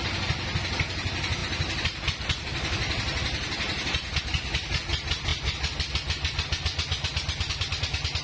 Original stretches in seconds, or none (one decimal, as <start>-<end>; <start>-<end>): 0.0-8.2